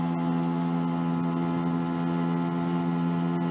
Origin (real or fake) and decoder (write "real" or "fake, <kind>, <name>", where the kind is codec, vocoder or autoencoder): real